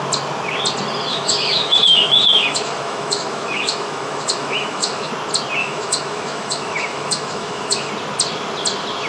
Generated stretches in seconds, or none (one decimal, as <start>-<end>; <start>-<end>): 1.1-5.1; 5.6-7.9